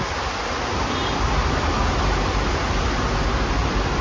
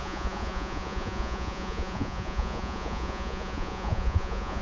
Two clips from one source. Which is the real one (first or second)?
first